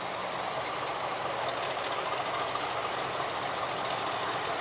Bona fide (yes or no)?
yes